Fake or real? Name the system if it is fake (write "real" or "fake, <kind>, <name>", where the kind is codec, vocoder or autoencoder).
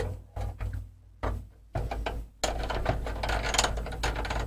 real